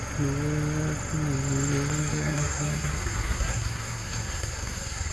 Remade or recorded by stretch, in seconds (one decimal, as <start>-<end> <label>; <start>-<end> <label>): 0.0-2.0 recorded; 2.0-5.1 remade